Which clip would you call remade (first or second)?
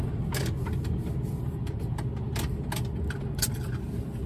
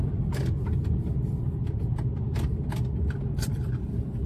second